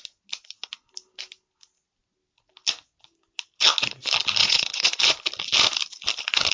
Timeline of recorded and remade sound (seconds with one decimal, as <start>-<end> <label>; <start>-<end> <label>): 0.0-4.4 recorded; 4.4-5.0 remade; 5.0-6.5 recorded